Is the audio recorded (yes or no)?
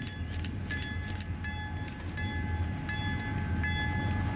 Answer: yes